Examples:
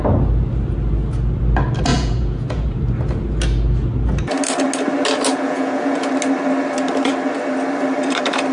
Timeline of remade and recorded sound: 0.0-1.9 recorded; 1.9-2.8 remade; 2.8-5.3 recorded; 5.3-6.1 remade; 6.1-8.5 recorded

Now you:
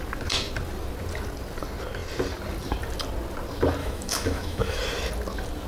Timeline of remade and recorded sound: 0.0-3.8 recorded; 3.8-4.8 remade; 4.8-5.7 recorded